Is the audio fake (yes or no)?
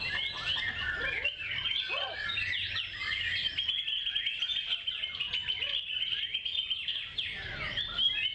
no